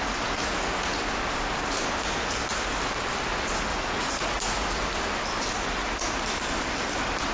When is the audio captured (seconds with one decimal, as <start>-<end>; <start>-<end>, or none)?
0.0-3.7; 4.8-7.3